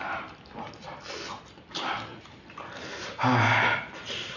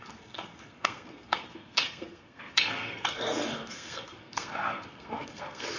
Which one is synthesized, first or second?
second